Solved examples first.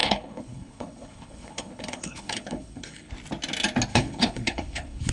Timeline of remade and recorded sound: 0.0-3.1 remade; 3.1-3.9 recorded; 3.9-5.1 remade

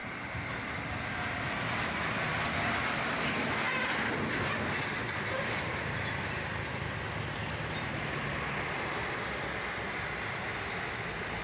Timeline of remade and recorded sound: 0.0-11.4 recorded

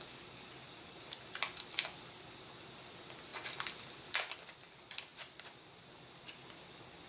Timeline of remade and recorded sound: 0.0-5.1 recorded; 5.1-5.9 remade; 5.9-7.1 recorded